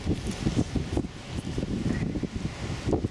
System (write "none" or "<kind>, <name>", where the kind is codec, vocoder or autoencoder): none